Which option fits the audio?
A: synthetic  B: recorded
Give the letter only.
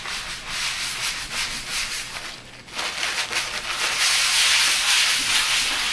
B